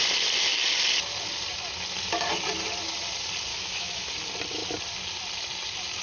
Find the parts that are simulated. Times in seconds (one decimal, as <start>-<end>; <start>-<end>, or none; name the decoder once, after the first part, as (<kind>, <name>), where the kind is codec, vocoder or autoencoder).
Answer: 3.5-4.1 (autoencoder, DAC-VAE)